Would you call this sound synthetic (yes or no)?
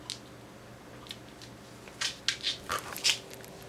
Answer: no